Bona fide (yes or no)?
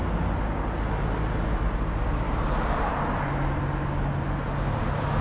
yes